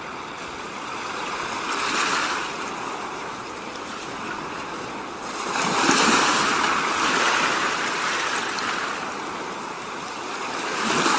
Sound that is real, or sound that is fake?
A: real